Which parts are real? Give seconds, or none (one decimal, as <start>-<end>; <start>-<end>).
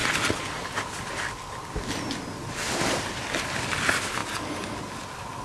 0.0-5.4